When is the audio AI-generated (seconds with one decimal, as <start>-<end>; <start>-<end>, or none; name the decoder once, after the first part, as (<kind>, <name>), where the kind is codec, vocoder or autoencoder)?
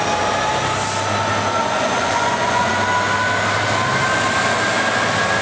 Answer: 1.6-2.7 (vocoder, Vocos)